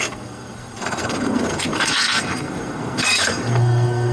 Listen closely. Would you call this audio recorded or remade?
remade